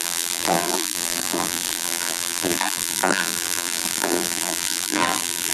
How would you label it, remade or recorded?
remade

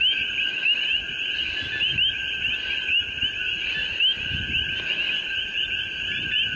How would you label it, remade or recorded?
recorded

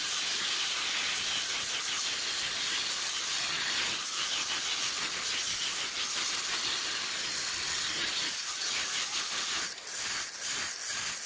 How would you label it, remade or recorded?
recorded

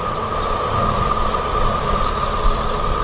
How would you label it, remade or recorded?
recorded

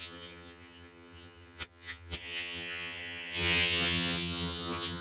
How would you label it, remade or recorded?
remade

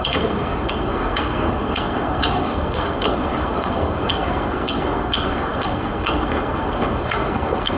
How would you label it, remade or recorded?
remade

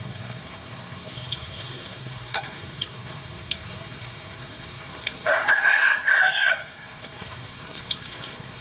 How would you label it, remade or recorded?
remade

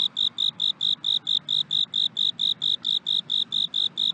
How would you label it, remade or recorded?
recorded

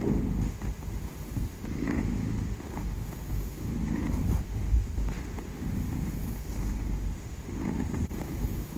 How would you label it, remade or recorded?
remade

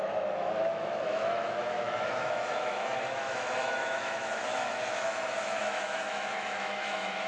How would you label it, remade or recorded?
remade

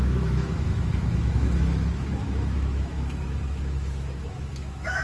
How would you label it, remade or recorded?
remade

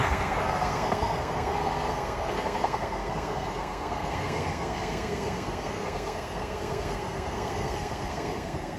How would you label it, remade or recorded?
remade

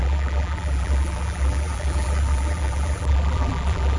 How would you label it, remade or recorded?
remade